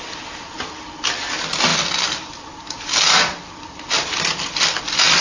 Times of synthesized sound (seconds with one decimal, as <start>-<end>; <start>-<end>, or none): 1.7-4.8